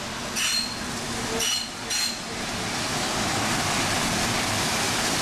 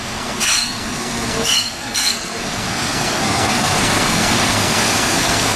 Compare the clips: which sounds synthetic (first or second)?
second